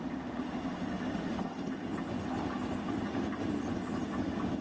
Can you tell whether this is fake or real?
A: real